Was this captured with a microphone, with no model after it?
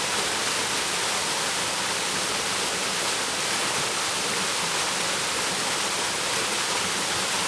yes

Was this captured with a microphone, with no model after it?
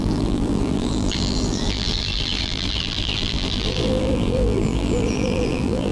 no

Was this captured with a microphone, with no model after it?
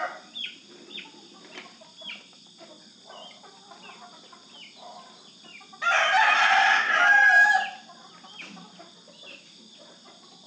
yes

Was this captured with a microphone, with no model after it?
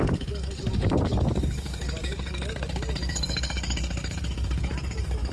no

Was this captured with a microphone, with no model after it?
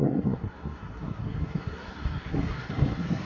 no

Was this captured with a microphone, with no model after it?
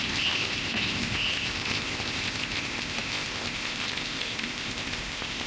no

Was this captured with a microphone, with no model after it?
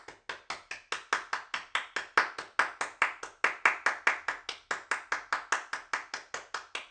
yes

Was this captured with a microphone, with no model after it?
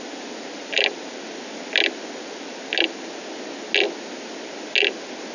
yes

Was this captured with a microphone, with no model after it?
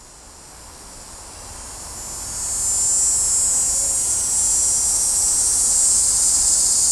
yes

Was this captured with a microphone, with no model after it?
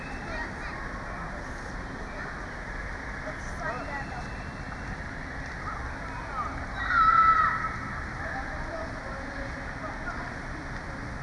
yes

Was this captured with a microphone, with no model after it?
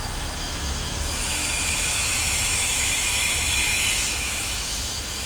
no